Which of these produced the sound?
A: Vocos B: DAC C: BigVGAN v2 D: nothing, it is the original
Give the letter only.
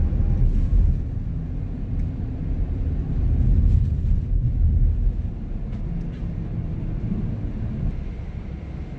D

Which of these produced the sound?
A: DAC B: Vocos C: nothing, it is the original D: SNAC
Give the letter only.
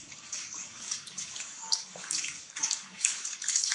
A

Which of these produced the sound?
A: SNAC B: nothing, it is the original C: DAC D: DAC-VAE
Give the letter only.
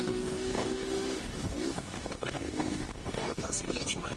C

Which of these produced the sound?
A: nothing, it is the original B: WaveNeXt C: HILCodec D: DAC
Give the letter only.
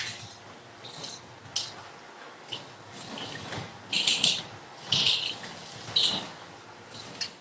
A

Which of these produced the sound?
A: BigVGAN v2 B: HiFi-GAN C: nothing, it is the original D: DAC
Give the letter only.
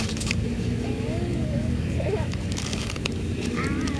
D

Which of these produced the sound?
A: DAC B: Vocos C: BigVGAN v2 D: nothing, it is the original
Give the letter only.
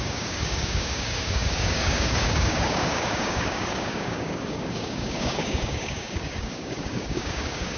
A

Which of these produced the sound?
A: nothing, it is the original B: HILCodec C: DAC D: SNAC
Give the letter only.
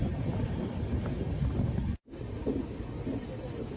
A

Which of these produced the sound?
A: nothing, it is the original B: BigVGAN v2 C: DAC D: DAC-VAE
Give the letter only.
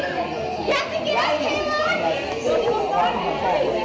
A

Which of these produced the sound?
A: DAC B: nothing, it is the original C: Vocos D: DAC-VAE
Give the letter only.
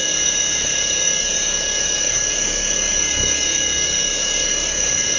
A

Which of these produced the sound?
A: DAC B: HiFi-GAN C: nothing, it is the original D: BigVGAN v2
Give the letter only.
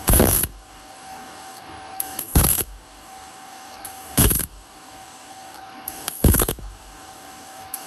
A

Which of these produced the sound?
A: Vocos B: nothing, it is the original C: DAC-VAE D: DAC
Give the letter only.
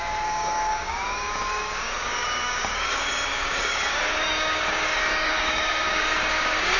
D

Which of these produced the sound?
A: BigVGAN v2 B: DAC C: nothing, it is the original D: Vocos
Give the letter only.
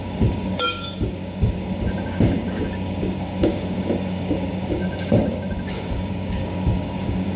B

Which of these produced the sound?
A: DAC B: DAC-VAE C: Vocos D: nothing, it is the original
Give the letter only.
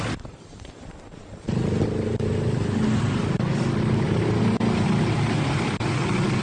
D